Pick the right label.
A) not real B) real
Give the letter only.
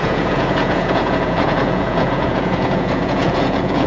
A